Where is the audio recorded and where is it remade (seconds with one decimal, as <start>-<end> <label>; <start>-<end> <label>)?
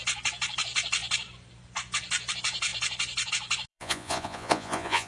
0.0-3.7 recorded; 3.7-5.1 remade